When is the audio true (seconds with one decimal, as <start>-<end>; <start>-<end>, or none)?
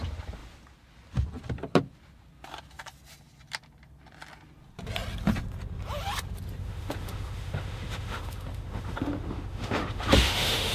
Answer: 0.0-6.6